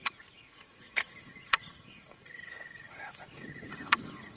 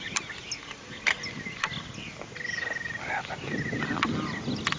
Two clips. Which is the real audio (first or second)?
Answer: second